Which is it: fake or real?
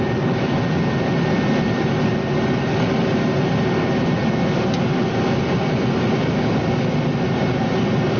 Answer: real